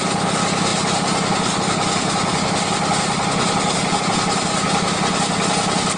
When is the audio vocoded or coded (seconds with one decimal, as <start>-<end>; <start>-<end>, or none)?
none